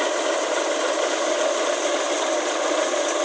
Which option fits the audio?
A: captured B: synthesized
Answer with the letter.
A